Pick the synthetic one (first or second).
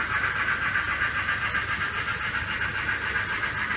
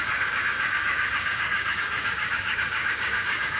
second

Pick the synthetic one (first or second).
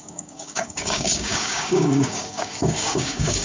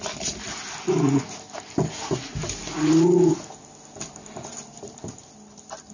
first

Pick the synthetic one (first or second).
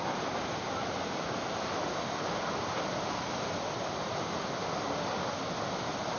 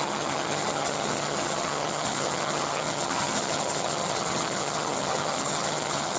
second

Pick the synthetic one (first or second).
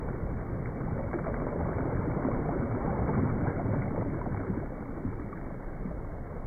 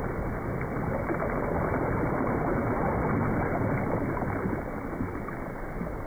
first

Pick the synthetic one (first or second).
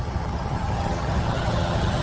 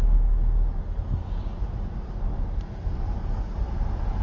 first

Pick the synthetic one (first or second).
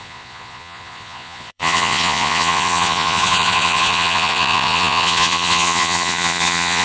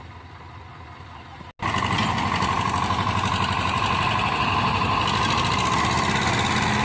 first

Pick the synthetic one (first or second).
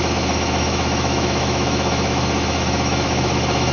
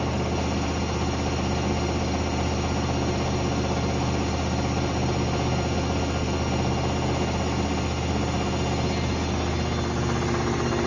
first